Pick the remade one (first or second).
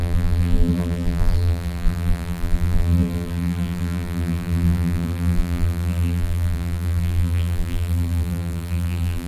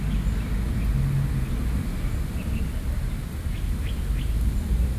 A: first